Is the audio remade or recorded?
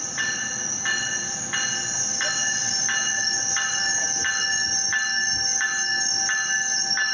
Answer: recorded